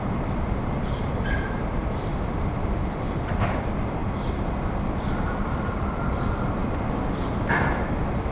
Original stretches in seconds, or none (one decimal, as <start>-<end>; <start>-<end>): 4.0-5.0; 6.6-7.3